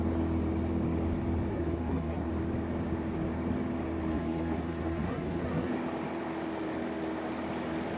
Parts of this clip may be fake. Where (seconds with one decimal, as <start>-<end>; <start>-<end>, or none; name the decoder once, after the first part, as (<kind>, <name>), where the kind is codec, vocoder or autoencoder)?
1.5-2.3 (codec, SNAC); 4.1-5.7